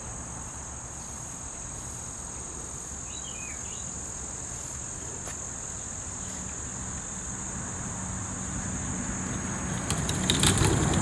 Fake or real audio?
real